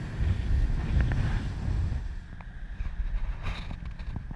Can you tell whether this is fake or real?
real